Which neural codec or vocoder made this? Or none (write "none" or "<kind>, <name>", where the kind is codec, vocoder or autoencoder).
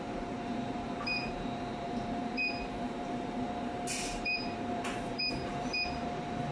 vocoder, BigVGAN v2